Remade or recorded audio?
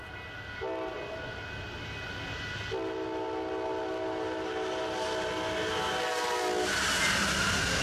recorded